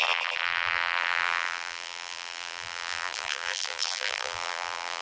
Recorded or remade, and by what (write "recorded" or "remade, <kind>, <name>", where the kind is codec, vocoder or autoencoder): remade, vocoder, BigVGAN v2